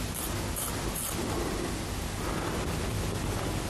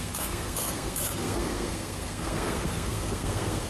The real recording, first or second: first